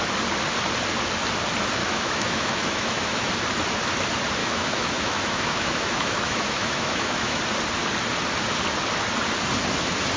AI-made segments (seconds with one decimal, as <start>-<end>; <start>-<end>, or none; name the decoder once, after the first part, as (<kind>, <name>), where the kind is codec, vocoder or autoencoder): 1.8-3.3 (autoencoder, DAC-VAE); 4.4-7.4